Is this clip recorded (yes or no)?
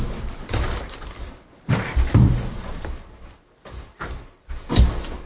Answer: no